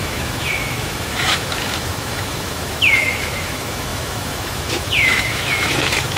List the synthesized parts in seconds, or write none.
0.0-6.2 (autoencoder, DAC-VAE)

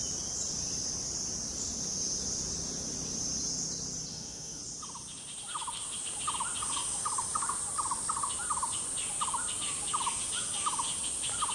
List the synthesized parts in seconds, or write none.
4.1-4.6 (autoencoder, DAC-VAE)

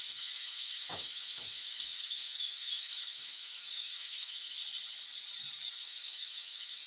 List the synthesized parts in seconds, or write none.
0.0-4.6 (autoencoder, DAC-VAE); 5.7-6.9

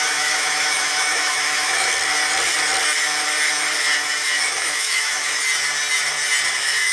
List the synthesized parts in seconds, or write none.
0.0-1.9 (autoencoder, DAC-VAE); 3.8-5.4; 6.5-6.9

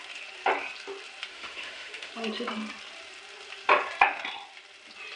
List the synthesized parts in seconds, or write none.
1.3-2.1 (autoencoder, DAC-VAE)

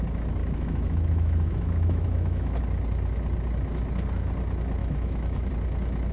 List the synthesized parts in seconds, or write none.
0.4-2.6 (autoencoder, DAC-VAE); 4.8-5.5

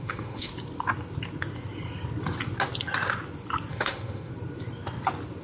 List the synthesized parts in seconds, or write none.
0.0-0.5 (autoencoder, DAC-VAE); 3.7-4.3